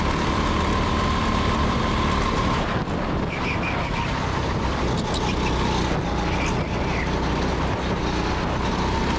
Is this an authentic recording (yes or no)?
yes